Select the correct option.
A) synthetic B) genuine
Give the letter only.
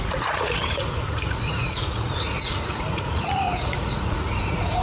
A